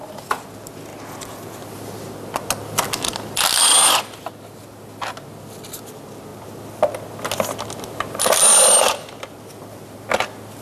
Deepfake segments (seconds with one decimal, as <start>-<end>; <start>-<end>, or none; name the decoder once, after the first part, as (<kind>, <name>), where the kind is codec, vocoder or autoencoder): none